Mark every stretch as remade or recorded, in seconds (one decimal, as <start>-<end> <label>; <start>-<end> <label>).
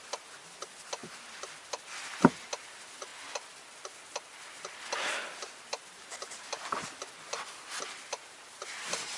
0.0-9.2 remade